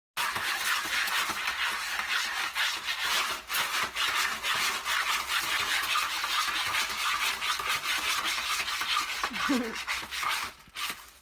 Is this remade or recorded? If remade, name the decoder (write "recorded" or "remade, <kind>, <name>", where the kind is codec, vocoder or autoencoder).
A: recorded